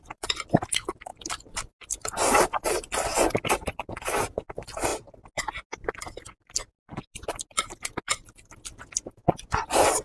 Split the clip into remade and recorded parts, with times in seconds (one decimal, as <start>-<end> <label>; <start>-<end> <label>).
0.0-10.0 recorded